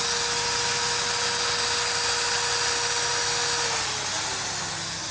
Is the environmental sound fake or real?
real